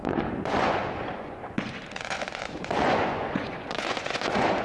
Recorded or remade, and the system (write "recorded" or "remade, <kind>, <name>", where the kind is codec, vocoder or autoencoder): remade, vocoder, Vocos